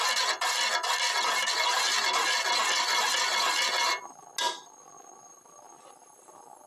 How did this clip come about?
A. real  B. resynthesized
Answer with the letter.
A